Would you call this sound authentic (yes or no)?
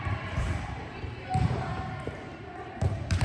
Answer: no